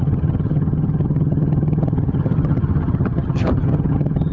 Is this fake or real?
fake